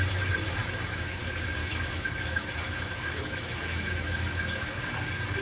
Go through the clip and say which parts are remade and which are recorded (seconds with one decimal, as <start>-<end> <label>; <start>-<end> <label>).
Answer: 0.0-0.6 recorded; 0.6-1.2 remade; 1.2-1.6 recorded; 1.6-4.8 remade; 4.8-5.4 recorded